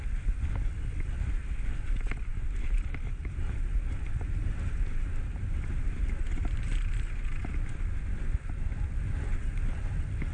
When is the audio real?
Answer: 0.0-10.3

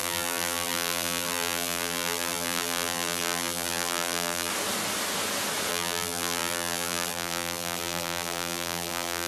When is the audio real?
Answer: 4.5-5.7

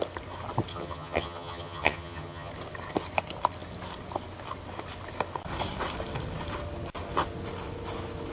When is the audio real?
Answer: 0.0-0.7; 2.5-8.3

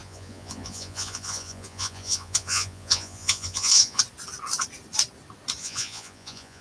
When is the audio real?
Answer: 4.0-5.6

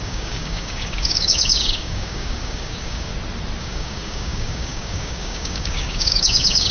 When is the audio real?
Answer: 3.1-3.6

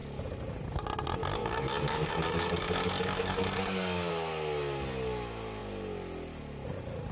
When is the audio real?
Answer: 0.0-1.4; 4.1-7.1